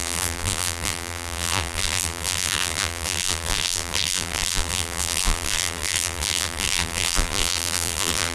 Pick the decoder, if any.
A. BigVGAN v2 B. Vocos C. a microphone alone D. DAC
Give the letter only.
A